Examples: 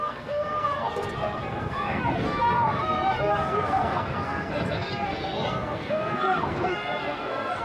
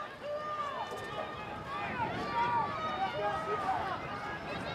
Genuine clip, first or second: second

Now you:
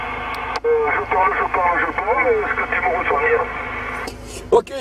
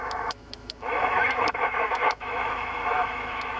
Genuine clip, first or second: first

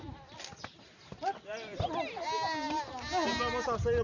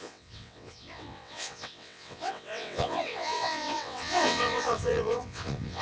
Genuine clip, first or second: first